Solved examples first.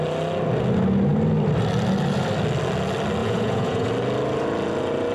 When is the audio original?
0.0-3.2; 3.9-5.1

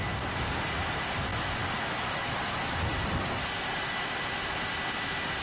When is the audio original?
0.0-5.4

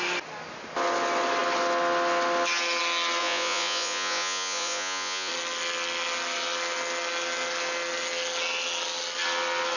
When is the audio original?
0.0-3.2; 5.3-9.8